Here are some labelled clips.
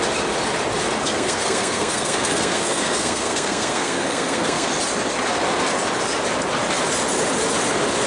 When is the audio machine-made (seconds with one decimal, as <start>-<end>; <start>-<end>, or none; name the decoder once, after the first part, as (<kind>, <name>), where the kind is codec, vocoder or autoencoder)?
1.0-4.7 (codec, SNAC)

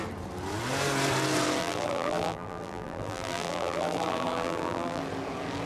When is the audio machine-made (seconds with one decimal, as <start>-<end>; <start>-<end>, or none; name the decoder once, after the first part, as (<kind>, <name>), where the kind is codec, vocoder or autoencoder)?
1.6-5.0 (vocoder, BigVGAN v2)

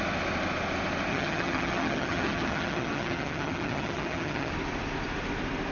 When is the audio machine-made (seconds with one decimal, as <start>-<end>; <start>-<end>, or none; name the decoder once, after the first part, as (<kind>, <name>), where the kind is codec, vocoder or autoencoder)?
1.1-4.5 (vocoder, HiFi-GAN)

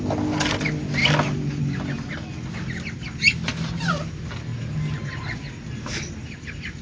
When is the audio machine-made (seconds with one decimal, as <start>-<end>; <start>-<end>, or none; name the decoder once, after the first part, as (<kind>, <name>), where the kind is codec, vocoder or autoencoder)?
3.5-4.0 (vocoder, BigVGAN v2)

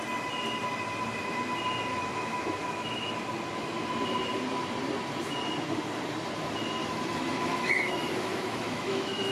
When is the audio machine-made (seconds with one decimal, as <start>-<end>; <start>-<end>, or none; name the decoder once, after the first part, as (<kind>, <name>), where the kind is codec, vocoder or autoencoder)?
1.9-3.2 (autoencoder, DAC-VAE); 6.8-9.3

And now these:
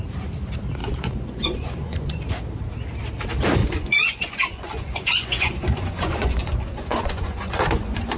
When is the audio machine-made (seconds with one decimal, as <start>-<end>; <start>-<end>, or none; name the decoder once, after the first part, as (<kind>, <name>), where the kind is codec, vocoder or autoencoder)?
0.8-2.2 (vocoder, Vocos); 3.6-8.2